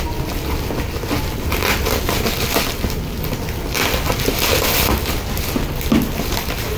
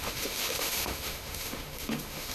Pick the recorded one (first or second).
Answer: first